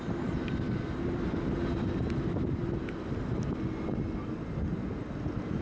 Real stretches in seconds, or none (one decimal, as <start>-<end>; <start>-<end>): 0.0-5.6